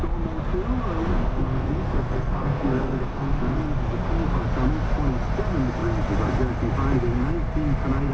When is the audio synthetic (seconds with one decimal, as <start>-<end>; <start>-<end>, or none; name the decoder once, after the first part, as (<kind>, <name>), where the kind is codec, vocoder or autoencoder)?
1.1-3.6 (codec, SNAC)